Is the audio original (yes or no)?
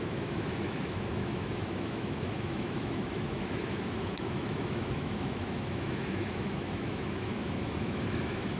no